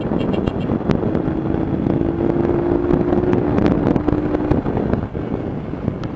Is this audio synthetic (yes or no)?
no